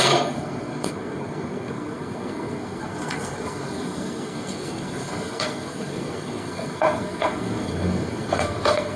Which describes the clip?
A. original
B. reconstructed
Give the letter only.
B